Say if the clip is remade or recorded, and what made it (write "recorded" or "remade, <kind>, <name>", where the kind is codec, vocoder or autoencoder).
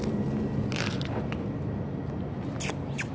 recorded